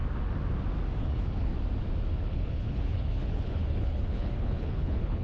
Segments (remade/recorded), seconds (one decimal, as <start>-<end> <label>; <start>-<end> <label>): 0.0-1.0 recorded; 1.0-1.5 remade; 1.5-2.2 recorded; 2.2-5.2 remade